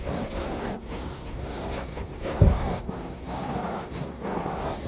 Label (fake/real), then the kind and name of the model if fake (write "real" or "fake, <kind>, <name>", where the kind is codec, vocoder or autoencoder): fake, codec, SNAC